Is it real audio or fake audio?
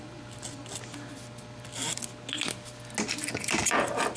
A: real